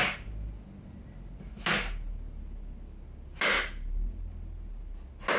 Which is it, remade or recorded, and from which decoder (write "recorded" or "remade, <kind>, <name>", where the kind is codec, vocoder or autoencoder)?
recorded